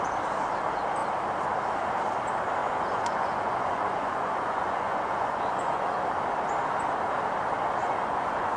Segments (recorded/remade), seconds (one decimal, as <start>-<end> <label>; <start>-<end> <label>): 0.0-2.6 recorded; 2.6-6.0 remade; 6.0-7.8 recorded; 7.8-8.6 remade